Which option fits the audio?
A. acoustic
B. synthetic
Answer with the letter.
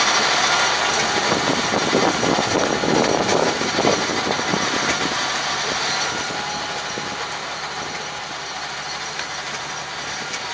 A